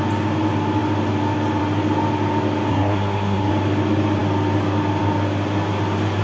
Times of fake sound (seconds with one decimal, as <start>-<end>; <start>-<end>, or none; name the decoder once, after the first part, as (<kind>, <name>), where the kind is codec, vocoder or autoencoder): 2.7-3.5 (codec, SNAC)